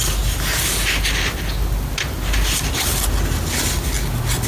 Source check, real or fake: real